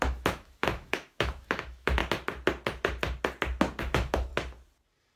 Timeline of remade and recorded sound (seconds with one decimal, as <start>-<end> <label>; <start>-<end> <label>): 0.0-2.0 remade; 2.0-3.8 recorded; 3.8-4.3 remade; 4.3-5.2 recorded